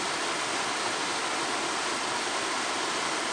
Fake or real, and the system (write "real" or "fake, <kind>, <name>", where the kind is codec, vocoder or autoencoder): real